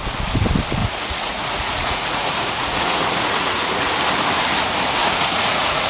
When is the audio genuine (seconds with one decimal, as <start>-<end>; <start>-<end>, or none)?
0.0-0.8; 3.9-5.0